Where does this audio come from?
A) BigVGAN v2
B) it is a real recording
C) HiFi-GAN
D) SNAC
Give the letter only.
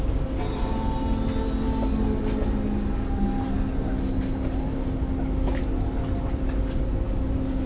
B